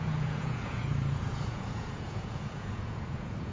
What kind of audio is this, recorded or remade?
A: remade